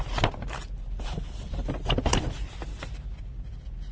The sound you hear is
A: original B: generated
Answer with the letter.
A